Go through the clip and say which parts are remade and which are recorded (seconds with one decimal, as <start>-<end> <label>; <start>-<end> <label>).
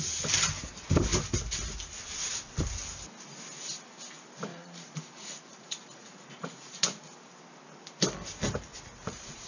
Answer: 0.0-4.5 recorded; 4.5-7.0 remade; 7.0-8.7 recorded; 8.7-9.5 remade